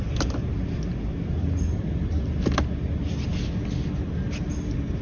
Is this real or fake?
real